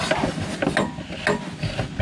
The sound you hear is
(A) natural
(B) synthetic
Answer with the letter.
A